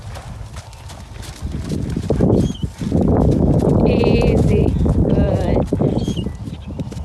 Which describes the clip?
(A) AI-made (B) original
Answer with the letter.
B